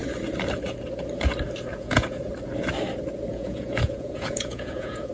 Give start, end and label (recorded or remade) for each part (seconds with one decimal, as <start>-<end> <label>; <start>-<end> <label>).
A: 0.0-1.7 recorded; 1.7-2.3 remade; 2.3-3.3 recorded; 3.3-5.1 remade

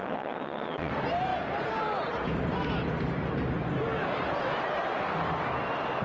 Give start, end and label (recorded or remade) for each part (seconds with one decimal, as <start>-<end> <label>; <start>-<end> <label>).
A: 0.0-0.9 remade; 0.9-6.0 recorded

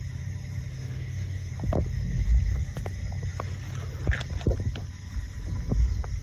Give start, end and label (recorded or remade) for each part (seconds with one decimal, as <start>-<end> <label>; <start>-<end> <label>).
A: 0.0-0.7 recorded; 0.7-1.5 remade; 1.5-6.2 recorded